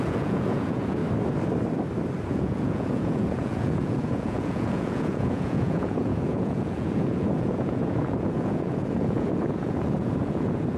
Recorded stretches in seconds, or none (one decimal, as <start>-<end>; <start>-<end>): 1.0-2.3

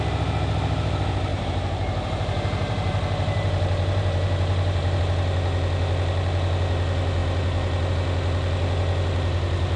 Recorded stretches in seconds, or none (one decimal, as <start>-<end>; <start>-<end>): 0.0-1.3; 5.0-9.8

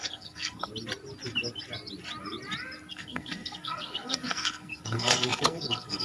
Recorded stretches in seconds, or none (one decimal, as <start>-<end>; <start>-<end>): 0.7-2.9